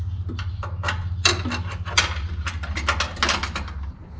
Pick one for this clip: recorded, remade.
recorded